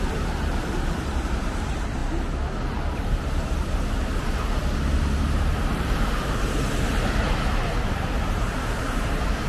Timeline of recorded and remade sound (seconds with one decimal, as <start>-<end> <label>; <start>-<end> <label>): 0.0-2.0 remade; 2.0-5.6 recorded; 5.6-9.5 remade